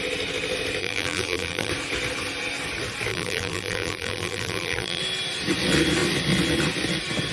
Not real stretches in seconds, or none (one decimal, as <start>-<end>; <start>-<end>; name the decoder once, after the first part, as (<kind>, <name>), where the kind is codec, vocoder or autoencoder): 0.8-1.7 (vocoder, BigVGAN v2); 3.1-5.0